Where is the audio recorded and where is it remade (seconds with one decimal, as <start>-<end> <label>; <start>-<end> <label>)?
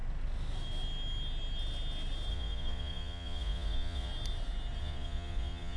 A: 0.0-2.3 recorded; 2.3-4.1 remade; 4.1-4.8 recorded; 4.8-5.8 remade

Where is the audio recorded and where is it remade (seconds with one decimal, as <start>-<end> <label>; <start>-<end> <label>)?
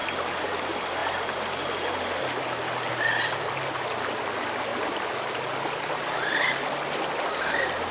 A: 0.0-7.9 recorded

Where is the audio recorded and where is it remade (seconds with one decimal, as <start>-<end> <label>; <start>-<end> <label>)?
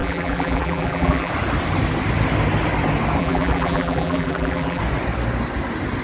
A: 0.0-1.3 remade; 1.3-3.2 recorded; 3.2-4.8 remade; 4.8-6.0 recorded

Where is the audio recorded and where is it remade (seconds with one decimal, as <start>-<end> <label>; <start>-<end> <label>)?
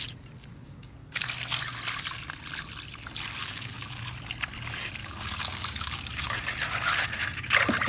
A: 0.0-0.4 recorded; 0.4-1.3 remade; 1.3-3.4 recorded; 3.4-4.0 remade; 4.0-5.0 recorded; 5.0-6.4 remade; 6.4-7.9 recorded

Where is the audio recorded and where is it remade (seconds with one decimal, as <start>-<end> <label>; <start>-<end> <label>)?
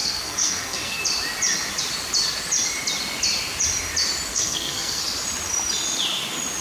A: 0.0-1.0 remade; 1.0-4.3 recorded; 4.3-5.0 remade; 5.0-6.6 recorded